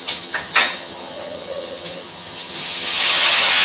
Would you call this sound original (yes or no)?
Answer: no